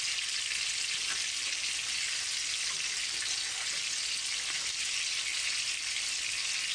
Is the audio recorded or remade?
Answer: recorded